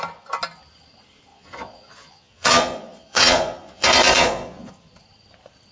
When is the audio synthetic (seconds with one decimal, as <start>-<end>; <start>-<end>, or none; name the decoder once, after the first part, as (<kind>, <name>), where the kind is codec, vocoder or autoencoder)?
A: 1.3-4.7 (vocoder, Vocos)

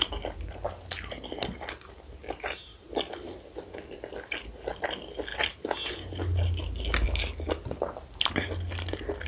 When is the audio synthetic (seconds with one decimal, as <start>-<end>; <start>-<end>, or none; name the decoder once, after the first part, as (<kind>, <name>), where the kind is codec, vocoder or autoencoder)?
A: none